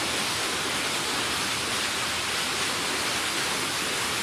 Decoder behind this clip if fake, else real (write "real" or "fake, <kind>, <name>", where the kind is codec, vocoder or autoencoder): real